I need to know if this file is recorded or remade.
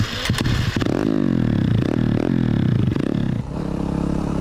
remade